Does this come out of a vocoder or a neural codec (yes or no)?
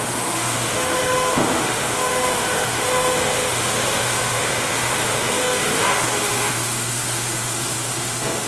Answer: yes